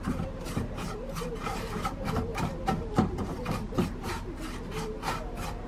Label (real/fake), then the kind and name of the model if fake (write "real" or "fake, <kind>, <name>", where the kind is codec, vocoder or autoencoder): fake, vocoder, BigVGAN v2